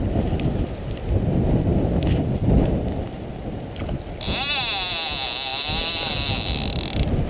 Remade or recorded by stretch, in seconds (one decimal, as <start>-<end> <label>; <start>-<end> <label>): 0.0-1.7 recorded; 1.7-3.3 remade; 3.3-5.5 recorded; 5.5-6.8 remade; 6.8-7.3 recorded